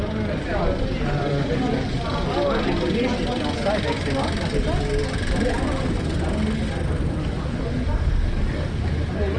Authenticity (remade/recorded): recorded